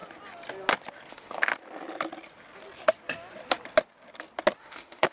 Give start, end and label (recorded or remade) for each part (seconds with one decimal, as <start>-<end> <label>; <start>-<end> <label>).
0.0-1.1 recorded; 1.1-1.5 remade; 1.5-4.6 recorded; 4.6-5.1 remade